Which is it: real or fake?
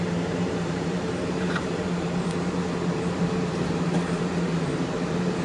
fake